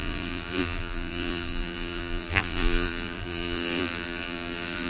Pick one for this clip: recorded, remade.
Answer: remade